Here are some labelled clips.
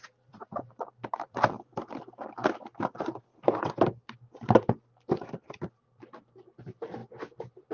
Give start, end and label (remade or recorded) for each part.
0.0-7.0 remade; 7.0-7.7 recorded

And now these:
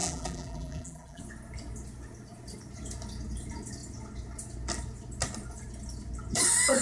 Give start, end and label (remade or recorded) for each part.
0.0-1.2 remade; 1.2-6.8 recorded

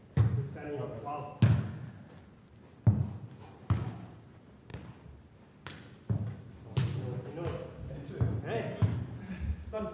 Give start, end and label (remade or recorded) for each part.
0.0-4.7 recorded; 4.7-5.5 remade; 5.5-9.9 recorded